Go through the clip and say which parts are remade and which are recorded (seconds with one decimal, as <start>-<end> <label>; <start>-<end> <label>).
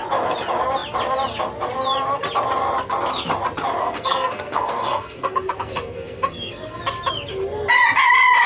0.0-3.8 recorded; 3.8-6.8 remade; 6.8-8.5 recorded